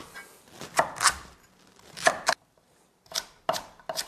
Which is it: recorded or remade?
recorded